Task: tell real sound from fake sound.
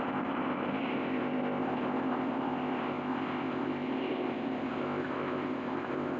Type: fake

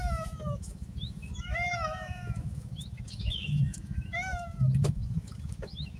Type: fake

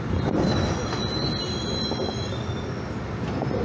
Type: real